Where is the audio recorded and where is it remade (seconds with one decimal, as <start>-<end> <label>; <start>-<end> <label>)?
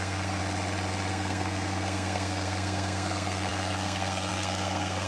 0.0-0.4 remade; 0.4-1.1 recorded; 1.1-5.1 remade